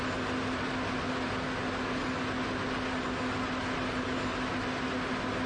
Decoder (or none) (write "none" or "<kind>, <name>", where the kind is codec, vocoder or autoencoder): none